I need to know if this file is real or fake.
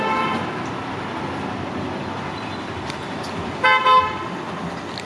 real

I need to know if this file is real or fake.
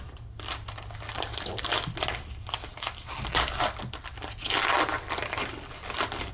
real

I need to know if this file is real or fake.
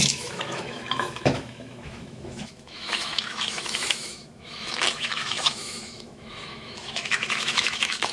fake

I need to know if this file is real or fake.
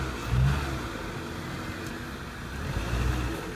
real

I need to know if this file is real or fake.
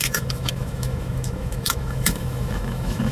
fake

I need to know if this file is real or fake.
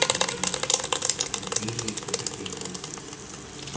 real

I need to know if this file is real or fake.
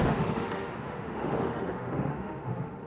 fake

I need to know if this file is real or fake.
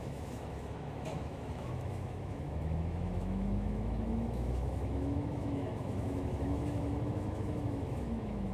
fake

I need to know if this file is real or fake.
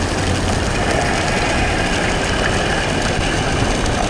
real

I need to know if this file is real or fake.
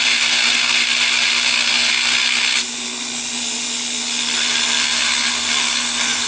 real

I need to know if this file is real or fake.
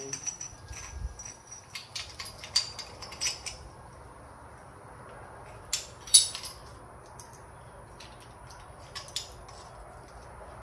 real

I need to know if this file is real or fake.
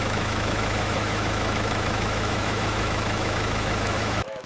fake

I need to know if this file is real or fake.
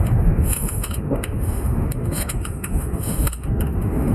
fake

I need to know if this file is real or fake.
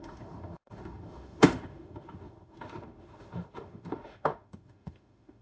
fake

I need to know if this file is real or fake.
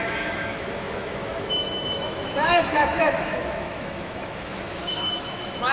fake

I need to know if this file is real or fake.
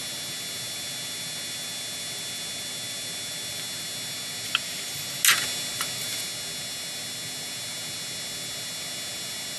real